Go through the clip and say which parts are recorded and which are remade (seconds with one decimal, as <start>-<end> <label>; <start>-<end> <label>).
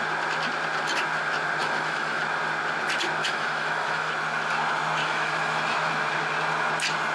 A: 0.0-1.6 recorded; 1.6-2.2 remade; 2.2-3.2 recorded; 3.2-4.1 remade; 4.1-5.0 recorded; 5.0-5.9 remade; 5.9-7.1 recorded